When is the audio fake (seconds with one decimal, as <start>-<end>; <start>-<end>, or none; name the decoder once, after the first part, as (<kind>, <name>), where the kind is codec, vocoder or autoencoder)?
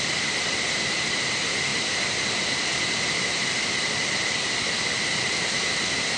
none